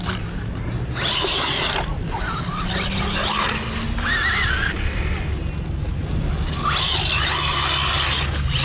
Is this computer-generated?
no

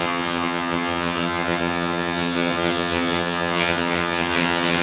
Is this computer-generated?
yes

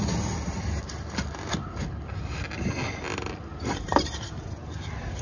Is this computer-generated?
no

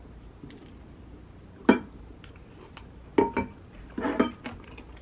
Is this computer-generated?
no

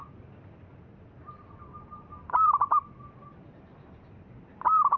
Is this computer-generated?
no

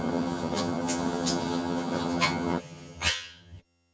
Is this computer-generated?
yes